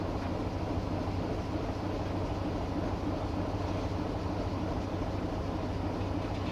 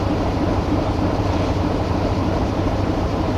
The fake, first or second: second